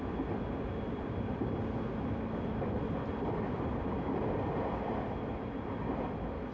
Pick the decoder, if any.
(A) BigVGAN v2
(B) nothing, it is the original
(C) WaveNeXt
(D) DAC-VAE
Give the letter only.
B